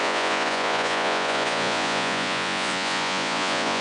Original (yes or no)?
no